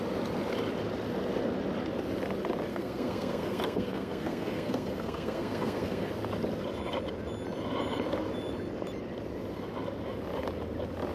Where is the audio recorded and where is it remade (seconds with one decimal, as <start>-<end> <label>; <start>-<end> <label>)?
0.0-2.7 recorded; 2.7-6.1 remade; 6.1-11.1 recorded

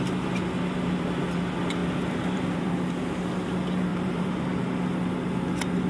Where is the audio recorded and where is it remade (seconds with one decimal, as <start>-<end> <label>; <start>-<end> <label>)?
0.0-1.8 recorded; 1.8-2.7 remade; 2.7-3.9 recorded; 3.9-4.4 remade; 4.4-5.9 recorded

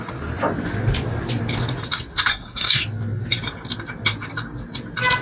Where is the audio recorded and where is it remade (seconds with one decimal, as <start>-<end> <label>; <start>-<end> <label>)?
0.0-2.3 recorded; 2.3-2.8 remade; 2.8-5.2 recorded

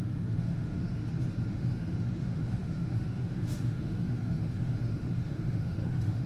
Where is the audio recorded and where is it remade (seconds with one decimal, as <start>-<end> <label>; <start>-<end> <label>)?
0.0-1.0 remade; 1.0-1.5 recorded; 1.5-6.3 remade

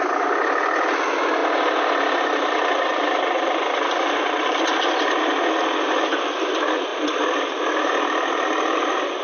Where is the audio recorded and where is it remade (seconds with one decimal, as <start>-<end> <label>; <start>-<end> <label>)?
0.0-6.9 recorded; 6.9-8.3 remade; 8.3-9.2 recorded

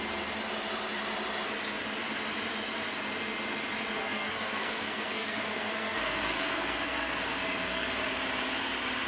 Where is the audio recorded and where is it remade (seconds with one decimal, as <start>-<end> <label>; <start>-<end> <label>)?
0.0-4.0 recorded; 4.0-8.0 remade; 8.0-9.1 recorded

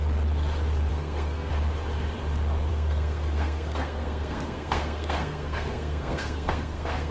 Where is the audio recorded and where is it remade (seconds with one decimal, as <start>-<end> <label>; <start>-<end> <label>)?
0.0-0.9 recorded; 0.9-1.5 remade; 1.5-2.7 recorded; 2.7-7.1 remade

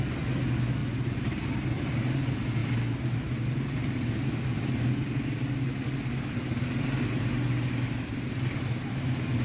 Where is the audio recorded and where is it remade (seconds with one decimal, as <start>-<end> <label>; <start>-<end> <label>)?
0.0-9.4 recorded